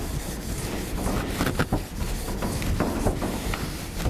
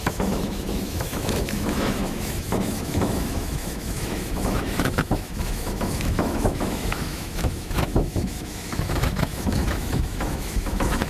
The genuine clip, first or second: first